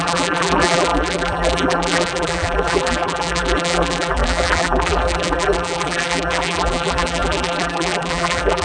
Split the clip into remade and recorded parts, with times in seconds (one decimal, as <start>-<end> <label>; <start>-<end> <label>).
0.0-8.6 remade